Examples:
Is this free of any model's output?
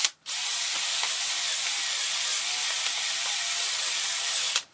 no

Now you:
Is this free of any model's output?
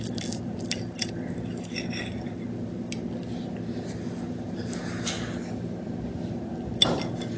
yes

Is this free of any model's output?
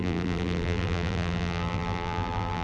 no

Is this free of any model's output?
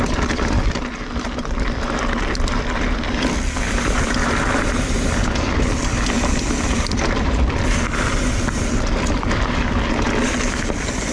yes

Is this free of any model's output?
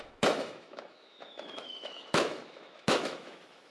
no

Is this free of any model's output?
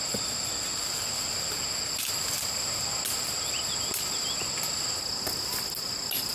yes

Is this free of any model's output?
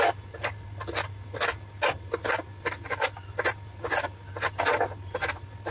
yes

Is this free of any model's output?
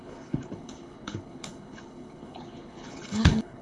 no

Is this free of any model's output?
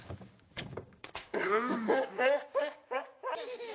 no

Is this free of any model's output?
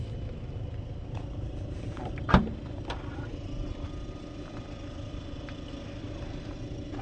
yes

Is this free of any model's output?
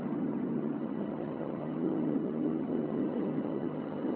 no